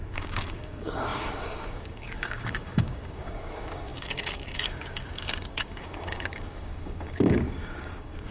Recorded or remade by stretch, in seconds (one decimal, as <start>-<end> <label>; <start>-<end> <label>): 0.0-8.3 remade